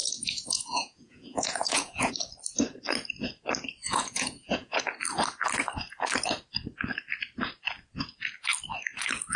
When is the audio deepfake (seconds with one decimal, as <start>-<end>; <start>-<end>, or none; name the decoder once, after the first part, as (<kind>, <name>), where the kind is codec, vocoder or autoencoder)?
0.0-2.1 (vocoder, Vocos); 3.8-4.8